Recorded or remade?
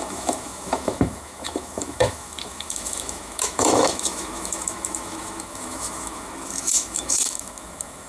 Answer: remade